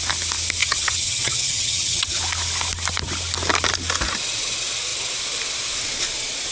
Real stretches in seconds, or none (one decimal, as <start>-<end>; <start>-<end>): 0.0-0.6; 2.2-6.5